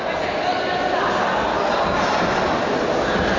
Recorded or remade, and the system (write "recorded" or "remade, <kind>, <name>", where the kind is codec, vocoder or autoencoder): recorded